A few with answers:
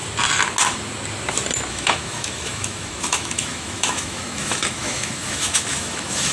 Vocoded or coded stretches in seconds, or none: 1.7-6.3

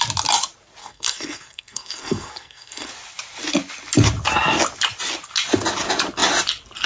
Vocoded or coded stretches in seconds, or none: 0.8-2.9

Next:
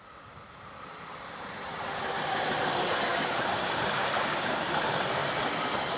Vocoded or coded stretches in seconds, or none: 0.0-5.2

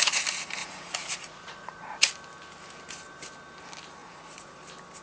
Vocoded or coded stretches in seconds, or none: 0.6-2.1; 4.0-4.6

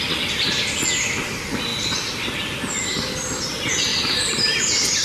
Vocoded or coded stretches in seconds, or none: 3.9-4.6

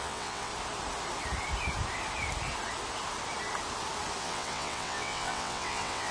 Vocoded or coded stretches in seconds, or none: 0.0-0.5; 4.2-6.1

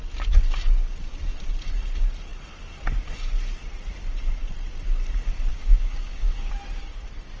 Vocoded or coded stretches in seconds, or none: 5.5-6.5